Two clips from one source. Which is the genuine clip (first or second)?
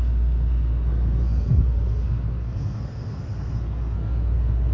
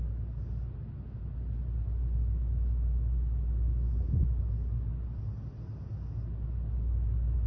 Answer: second